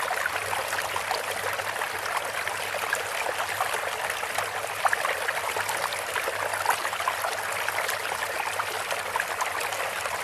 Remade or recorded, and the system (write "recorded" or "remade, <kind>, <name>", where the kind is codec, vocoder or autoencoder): recorded